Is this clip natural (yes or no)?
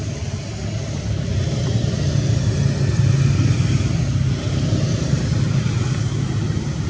yes